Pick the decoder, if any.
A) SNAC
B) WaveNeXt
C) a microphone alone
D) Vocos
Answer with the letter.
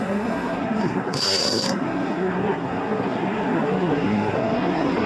A